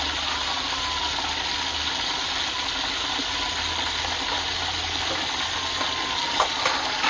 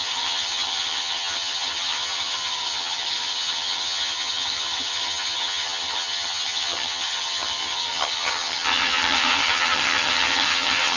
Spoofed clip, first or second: second